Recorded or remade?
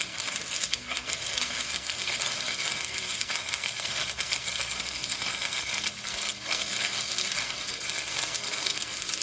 remade